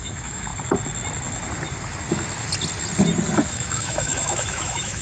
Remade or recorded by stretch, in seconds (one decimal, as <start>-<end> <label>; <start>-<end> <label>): 0.0-0.5 remade; 0.5-3.5 recorded; 3.5-5.0 remade